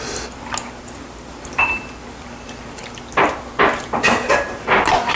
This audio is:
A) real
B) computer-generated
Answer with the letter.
A